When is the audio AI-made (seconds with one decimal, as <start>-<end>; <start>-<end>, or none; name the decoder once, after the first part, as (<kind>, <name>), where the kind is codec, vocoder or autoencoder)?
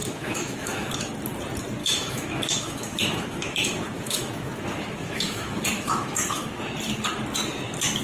0.0-1.1 (autoencoder, DAC-VAE); 1.8-6.6